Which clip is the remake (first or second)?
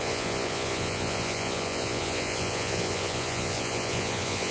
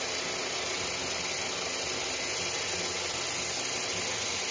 first